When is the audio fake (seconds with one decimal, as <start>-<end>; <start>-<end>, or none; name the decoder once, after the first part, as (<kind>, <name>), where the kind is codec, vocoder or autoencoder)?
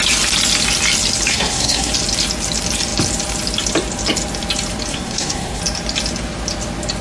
1.3-1.9 (codec, SNAC); 4.9-5.6